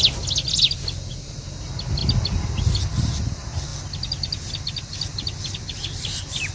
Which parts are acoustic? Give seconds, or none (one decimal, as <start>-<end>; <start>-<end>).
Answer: 0.0-6.5